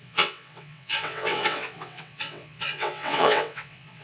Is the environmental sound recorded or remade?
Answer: remade